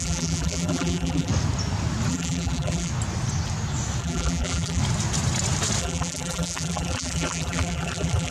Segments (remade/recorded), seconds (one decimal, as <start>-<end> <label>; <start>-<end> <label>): 0.0-1.3 remade; 1.3-2.1 recorded; 2.1-2.9 remade; 2.9-4.0 recorded; 4.0-4.8 remade; 4.8-5.8 recorded; 5.8-8.3 remade